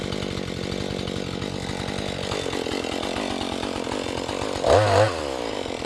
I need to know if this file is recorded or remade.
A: recorded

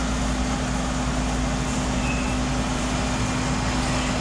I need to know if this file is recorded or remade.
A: recorded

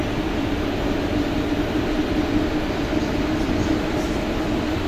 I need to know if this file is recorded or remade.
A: recorded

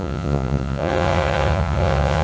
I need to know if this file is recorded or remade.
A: remade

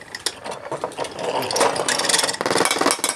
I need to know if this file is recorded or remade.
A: recorded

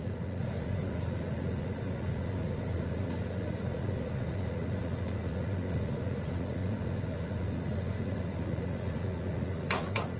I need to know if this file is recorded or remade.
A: remade